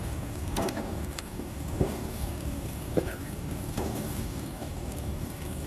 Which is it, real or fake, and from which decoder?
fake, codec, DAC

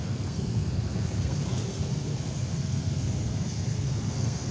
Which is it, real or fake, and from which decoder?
fake, codec, SNAC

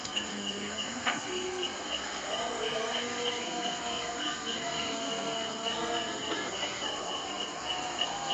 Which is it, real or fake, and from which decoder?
fake, codec, SNAC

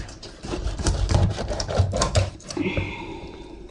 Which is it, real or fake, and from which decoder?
fake, vocoder, BigVGAN v2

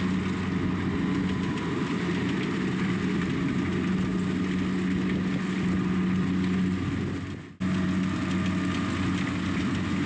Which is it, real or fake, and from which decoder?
real